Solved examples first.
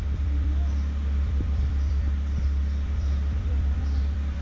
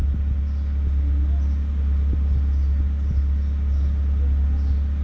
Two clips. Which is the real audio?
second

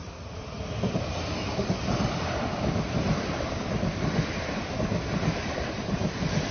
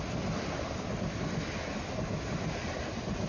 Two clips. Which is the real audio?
second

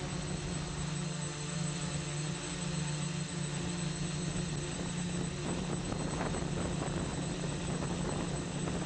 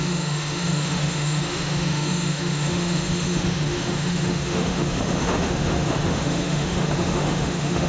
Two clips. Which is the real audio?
first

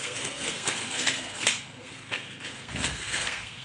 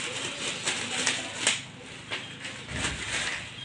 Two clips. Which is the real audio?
second